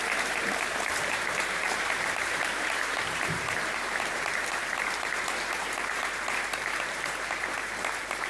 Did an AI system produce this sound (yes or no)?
yes